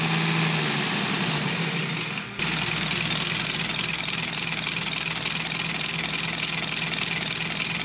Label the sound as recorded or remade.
recorded